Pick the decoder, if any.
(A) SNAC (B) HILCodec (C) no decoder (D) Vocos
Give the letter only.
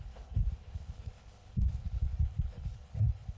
B